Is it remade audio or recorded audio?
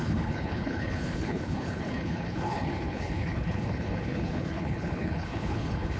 remade